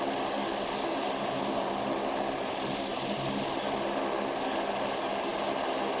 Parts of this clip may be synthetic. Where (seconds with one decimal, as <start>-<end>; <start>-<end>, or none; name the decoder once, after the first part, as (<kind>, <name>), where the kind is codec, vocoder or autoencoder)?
none